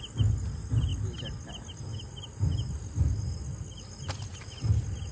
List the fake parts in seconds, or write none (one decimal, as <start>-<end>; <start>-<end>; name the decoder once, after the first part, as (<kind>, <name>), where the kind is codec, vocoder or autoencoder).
none